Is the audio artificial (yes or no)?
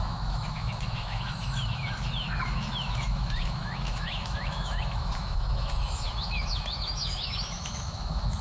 yes